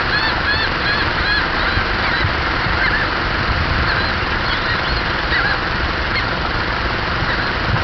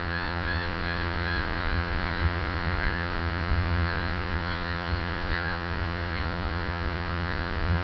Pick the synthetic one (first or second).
second